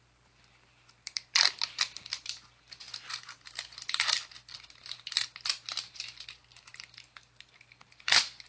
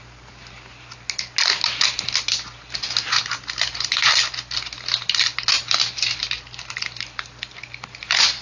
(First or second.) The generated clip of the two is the first